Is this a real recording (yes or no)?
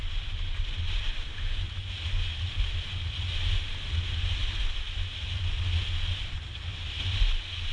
yes